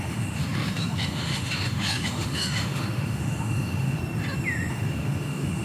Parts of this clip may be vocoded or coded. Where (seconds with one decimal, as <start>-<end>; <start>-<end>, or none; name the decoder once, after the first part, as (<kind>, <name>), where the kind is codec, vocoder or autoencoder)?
0.0-4.0 (autoencoder, DAC-VAE); 4.7-5.6